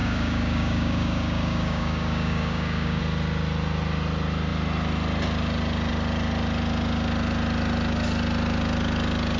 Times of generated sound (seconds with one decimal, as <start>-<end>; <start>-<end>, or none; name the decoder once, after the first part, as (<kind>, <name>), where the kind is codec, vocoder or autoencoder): 0.0-3.0 (codec, DAC)